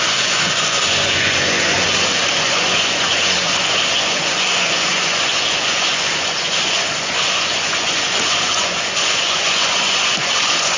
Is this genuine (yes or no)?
no